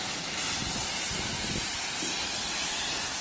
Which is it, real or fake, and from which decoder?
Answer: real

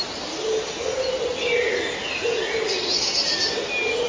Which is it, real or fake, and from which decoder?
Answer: real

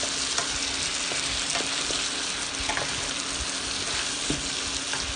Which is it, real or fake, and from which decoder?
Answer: real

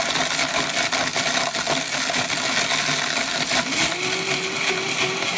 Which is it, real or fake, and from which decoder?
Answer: real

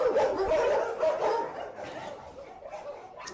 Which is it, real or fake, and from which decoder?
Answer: real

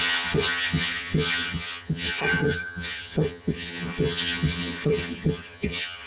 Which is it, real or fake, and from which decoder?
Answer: fake, vocoder, HiFi-GAN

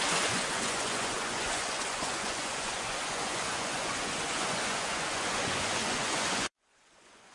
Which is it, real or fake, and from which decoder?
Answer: fake, vocoder, Vocos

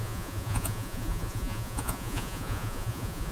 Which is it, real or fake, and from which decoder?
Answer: fake, vocoder, Vocos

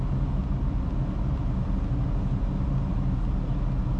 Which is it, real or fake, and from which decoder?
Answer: real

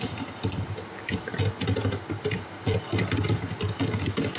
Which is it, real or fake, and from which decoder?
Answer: real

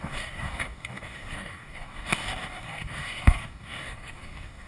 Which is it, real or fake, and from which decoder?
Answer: fake, codec, DAC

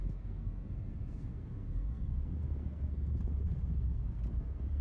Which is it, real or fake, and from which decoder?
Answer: fake, codec, SNAC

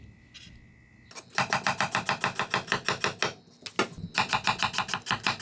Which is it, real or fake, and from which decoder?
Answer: real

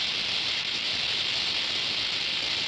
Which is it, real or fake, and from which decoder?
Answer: real